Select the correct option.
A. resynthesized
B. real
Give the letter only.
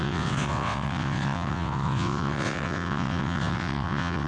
A